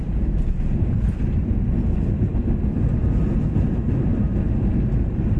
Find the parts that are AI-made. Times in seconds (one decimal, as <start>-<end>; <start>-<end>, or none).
none